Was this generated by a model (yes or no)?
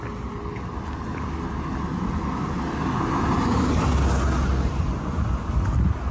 no